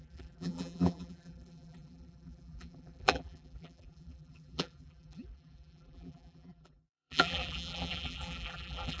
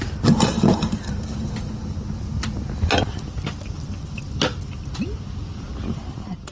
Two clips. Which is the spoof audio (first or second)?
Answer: first